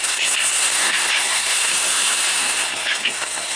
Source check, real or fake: fake